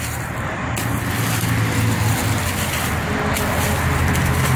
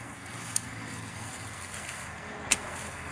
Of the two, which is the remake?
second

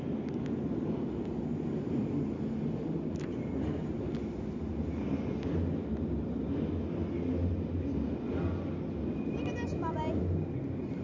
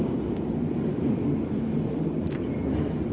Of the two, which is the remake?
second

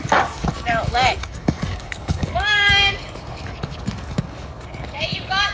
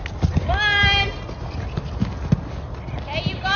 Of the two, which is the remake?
first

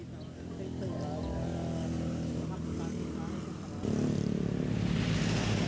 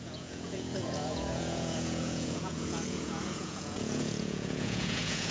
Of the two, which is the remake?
second